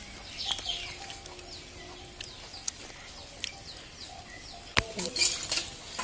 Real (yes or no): yes